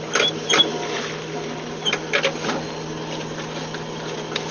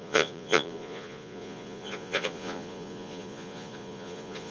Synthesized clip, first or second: second